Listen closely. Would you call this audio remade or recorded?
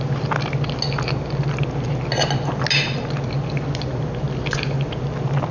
recorded